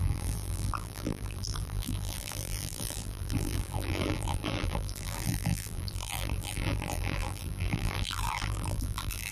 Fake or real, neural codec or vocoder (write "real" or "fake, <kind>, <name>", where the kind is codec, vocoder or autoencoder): fake, vocoder, BigVGAN v2